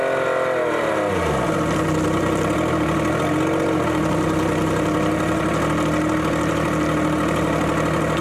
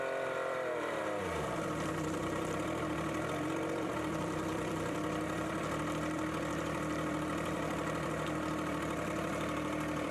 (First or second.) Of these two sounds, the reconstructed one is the second